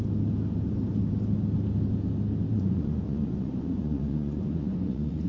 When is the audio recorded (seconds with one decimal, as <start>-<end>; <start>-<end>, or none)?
0.0-2.5